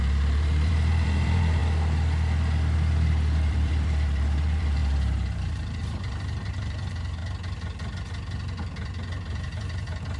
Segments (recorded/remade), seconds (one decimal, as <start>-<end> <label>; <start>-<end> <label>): 0.0-1.6 remade; 1.6-3.5 recorded; 3.5-7.2 remade; 7.2-9.3 recorded; 9.3-10.2 remade